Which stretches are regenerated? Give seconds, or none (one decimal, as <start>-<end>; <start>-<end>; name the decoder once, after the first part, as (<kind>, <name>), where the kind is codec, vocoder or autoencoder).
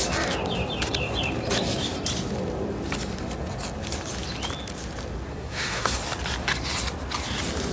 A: 5.3-6.0 (codec, SNAC)